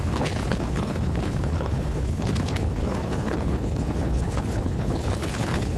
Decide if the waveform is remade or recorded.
remade